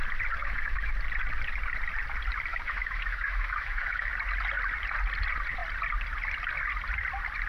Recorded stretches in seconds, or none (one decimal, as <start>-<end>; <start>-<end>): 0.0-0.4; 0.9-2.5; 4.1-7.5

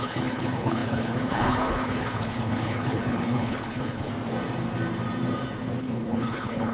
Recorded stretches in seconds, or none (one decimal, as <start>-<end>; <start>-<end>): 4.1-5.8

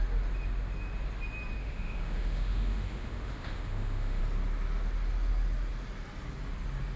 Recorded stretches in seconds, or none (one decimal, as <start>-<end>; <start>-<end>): 0.0-1.6; 4.2-7.0

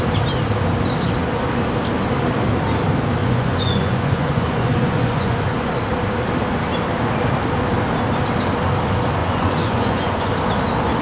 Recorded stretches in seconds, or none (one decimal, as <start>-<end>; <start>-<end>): 0.0-3.2; 5.7-9.2; 10.3-11.0

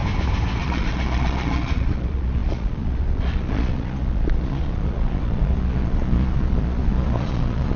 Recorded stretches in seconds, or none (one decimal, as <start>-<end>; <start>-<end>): 0.0-0.6

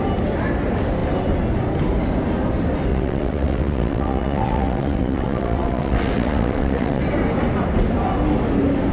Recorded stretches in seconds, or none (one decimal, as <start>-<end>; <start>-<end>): 0.0-2.9; 7.0-8.9

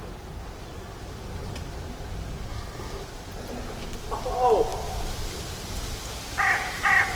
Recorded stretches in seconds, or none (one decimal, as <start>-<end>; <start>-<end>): 0.0-2.5; 3.0-7.2